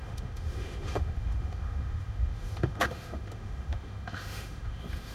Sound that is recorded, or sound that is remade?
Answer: remade